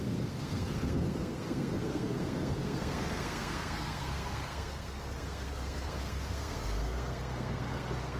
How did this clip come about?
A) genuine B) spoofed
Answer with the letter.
B